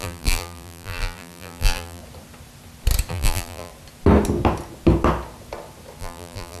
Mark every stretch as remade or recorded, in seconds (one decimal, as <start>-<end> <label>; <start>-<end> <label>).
0.0-2.0 remade; 2.0-3.1 recorded; 3.1-3.7 remade; 3.7-6.0 recorded; 6.0-6.6 remade